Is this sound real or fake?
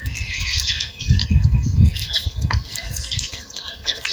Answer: fake